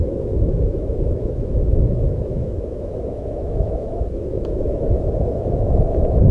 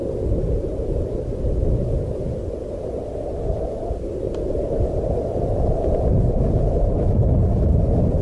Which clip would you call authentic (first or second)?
second